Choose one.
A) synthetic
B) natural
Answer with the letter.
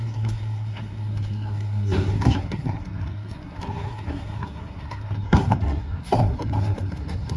A